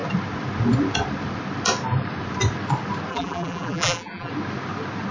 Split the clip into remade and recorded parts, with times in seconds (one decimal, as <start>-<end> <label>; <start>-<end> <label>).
0.0-3.1 recorded; 3.1-4.3 remade; 4.3-5.1 recorded